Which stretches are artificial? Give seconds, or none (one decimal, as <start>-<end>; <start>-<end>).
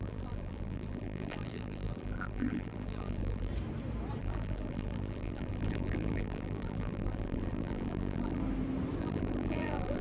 0.0-3.5; 4.2-8.4; 9.0-10.0